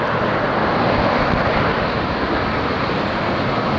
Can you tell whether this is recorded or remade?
recorded